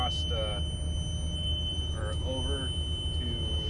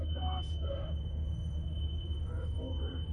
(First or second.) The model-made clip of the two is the second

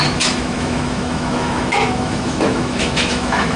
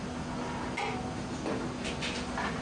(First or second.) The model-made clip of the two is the first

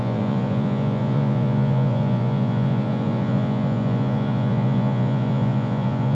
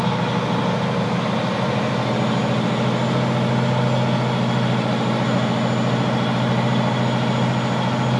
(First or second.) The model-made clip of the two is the first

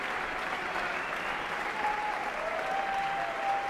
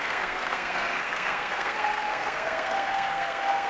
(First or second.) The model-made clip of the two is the second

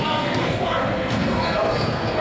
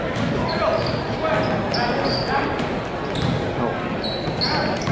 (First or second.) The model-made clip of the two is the first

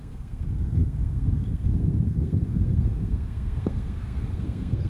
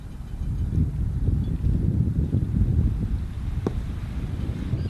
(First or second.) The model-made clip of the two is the first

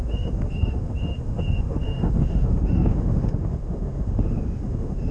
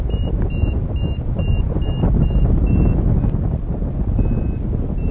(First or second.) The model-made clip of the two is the first